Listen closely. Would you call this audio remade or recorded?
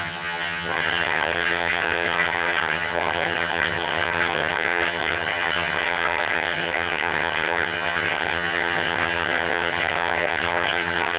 remade